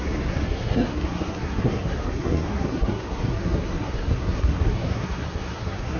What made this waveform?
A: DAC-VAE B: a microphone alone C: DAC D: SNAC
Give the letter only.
D